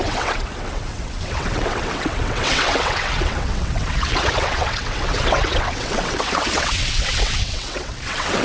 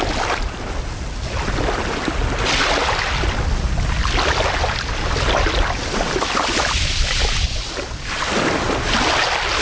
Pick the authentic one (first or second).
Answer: second